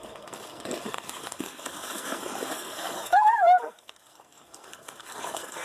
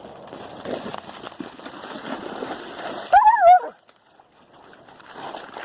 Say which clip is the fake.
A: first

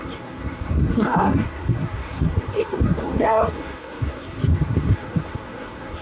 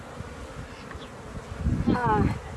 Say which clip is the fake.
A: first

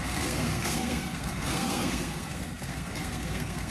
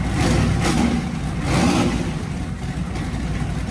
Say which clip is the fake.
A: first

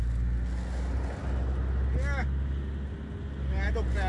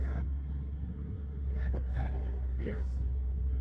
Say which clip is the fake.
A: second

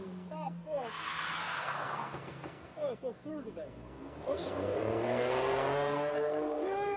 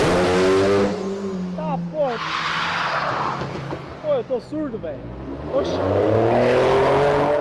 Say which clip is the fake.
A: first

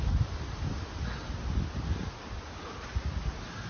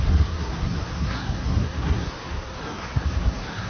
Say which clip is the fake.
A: second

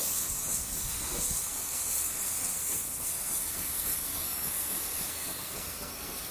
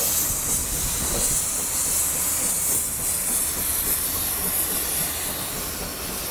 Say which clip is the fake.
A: first